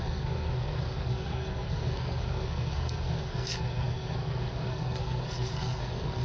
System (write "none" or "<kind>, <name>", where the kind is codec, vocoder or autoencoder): codec, SNAC